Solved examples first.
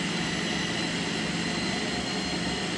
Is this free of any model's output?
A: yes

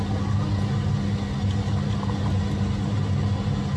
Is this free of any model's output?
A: yes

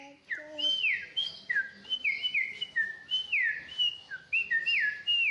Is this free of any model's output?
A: yes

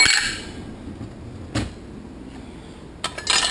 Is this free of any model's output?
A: yes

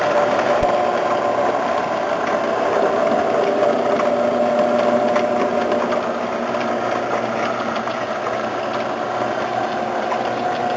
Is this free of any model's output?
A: yes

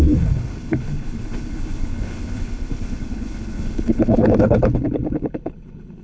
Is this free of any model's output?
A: no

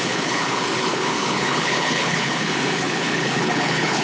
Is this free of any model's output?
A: no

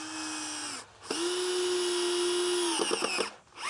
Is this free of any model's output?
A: yes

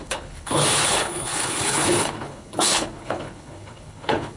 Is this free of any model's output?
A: no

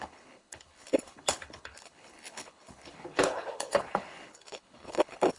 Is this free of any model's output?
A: no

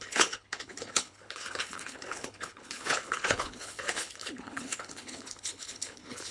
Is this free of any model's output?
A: no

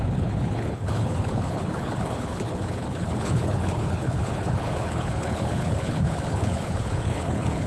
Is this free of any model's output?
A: no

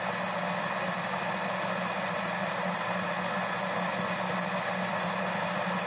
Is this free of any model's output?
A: yes